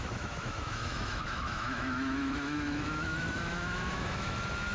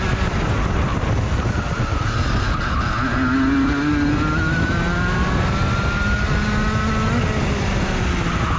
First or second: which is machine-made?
first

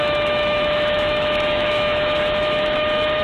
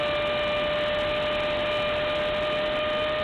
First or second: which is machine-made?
first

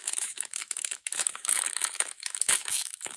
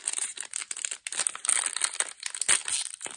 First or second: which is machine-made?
first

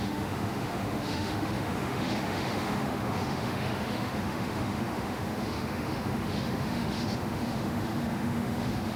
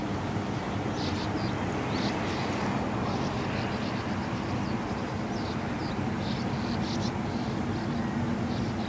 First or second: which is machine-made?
first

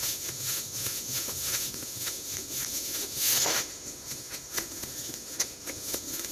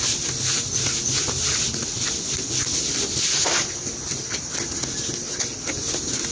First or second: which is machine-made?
first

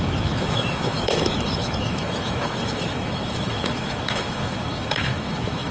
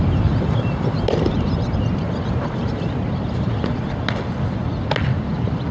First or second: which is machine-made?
first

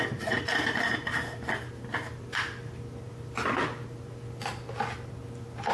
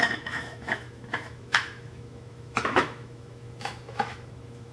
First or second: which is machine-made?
second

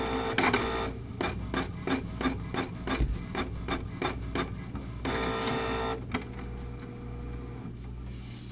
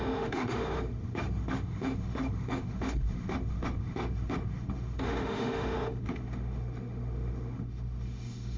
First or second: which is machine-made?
second